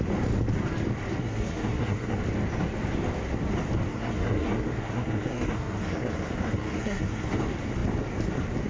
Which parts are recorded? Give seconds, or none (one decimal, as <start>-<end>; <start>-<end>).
0.0-1.2; 2.2-3.9; 7.3-8.7